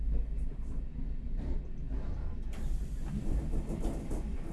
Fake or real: real